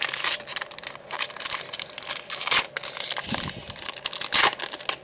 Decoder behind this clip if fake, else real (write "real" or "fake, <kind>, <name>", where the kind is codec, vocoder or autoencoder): real